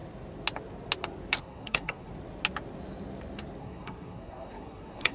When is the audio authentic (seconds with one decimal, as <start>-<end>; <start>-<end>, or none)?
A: 0.0-1.4; 2.1-3.6